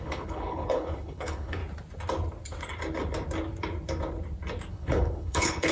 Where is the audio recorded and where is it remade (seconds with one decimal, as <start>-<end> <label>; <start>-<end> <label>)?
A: 0.0-1.6 remade; 1.6-4.7 recorded; 4.7-5.7 remade

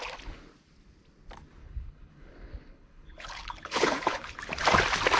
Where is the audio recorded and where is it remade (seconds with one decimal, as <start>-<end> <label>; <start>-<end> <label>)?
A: 0.0-1.6 recorded; 1.6-4.4 remade; 4.4-5.2 recorded

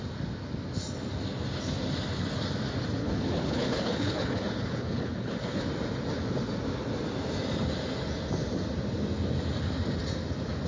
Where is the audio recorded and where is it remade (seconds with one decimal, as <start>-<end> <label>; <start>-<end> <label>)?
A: 0.0-3.0 recorded; 3.0-5.7 remade; 5.7-10.7 recorded

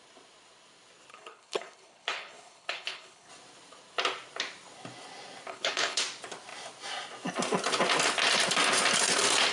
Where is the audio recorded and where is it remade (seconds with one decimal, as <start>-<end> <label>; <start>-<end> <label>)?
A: 0.0-1.1 recorded; 1.1-3.3 remade; 3.3-5.5 recorded; 5.5-6.0 remade; 6.0-9.5 recorded

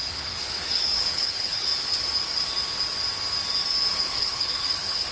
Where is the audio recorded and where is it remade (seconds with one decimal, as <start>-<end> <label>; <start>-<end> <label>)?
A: 0.0-1.7 remade; 1.7-4.0 recorded; 4.0-5.1 remade

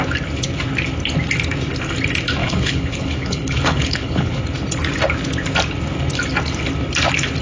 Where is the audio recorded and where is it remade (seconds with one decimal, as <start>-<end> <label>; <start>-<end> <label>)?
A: 0.0-2.4 recorded; 2.4-4.4 remade; 4.4-7.4 recorded